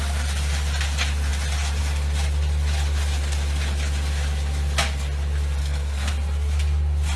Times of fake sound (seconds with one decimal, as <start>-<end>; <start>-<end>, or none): 5.6-6.1